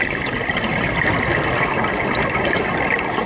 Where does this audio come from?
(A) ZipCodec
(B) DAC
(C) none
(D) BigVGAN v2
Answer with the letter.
C